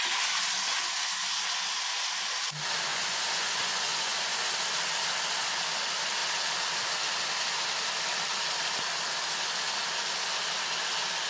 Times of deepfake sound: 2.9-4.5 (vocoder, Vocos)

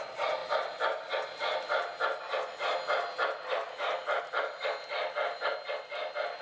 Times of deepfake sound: none

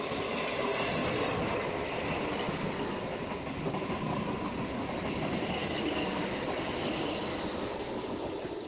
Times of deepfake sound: 5.6-6.2 (codec, DAC); 7.3-8.2

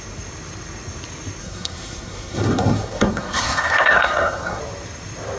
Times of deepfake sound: 1.4-4.6 (codec, SNAC)